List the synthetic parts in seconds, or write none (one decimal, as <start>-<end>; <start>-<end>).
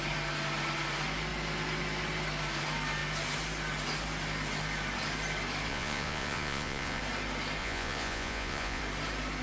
5.7-7.0; 7.6-8.8